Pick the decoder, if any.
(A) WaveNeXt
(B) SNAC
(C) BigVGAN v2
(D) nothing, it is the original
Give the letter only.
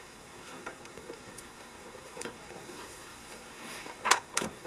B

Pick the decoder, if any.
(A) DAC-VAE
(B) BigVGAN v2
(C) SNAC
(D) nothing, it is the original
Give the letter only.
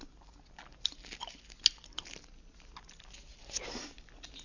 D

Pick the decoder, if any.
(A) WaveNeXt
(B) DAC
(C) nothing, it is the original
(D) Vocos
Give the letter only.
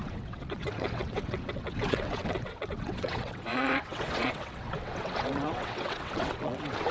A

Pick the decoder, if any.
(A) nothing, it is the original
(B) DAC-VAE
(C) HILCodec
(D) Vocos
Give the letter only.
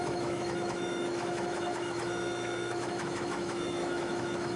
B